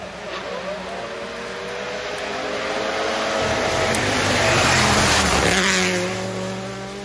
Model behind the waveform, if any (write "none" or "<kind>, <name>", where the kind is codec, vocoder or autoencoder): none